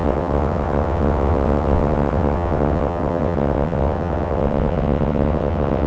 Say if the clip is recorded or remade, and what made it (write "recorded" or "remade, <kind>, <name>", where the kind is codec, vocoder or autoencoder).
remade, vocoder, WaveNeXt